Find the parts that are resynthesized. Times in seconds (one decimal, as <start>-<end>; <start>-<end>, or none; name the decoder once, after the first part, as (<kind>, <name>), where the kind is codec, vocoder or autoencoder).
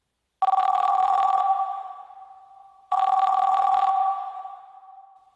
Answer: 0.6-1.9 (vocoder, Vocos); 2.6-4.6